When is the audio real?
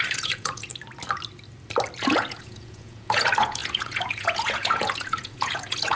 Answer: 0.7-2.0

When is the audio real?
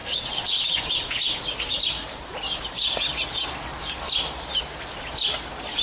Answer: 1.4-5.8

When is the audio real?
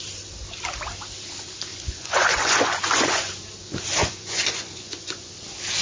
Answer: 0.0-1.7; 3.3-4.0; 5.3-5.8